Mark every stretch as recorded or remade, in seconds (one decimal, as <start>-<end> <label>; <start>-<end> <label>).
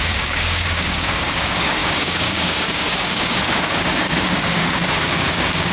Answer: 0.0-5.7 remade